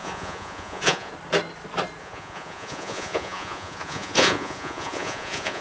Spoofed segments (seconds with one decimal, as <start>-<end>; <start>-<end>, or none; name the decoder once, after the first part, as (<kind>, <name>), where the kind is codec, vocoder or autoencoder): 0.0-1.1 (vocoder, Vocos); 2.0-5.6